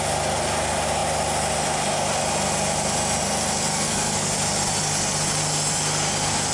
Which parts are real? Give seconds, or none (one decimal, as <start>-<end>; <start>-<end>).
0.0-3.7; 4.3-6.5